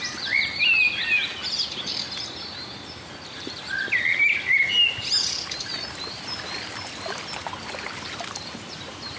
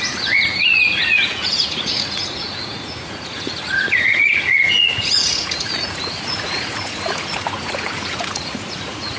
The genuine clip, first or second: first